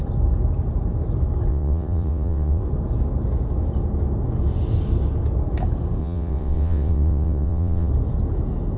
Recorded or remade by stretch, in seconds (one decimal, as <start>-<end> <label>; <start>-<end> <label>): 0.0-1.5 recorded; 1.5-2.6 remade; 2.6-6.0 recorded; 6.0-7.9 remade; 7.9-8.8 recorded